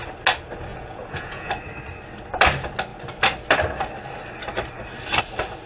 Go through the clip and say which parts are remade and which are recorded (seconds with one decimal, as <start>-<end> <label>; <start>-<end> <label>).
0.0-0.7 recorded; 0.7-1.5 remade; 1.5-5.7 recorded